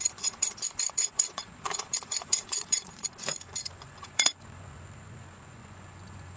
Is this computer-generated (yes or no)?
yes